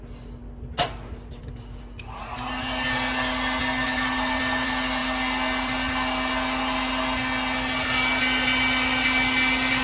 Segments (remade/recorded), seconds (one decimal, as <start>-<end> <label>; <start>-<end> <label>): 0.0-9.8 recorded